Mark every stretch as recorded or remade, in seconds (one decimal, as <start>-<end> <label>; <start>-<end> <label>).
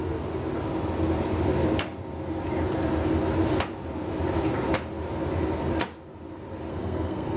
0.0-6.7 recorded; 6.7-7.4 remade